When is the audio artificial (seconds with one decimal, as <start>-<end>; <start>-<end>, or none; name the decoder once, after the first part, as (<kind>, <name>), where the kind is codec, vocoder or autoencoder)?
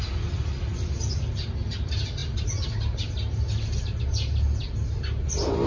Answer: none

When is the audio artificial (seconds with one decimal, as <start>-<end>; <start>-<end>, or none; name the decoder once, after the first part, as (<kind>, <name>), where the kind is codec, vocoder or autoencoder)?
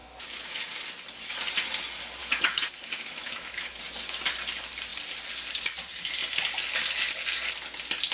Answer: 0.0-0.6 (autoencoder, DAC-VAE); 2.2-3.8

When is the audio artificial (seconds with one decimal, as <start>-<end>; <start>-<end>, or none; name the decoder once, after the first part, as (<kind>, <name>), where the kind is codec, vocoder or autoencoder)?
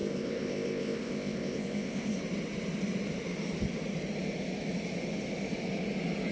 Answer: 0.0-2.2 (codec, ZipCodec)